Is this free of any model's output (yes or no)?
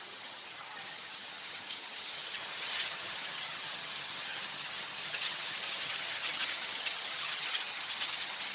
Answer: no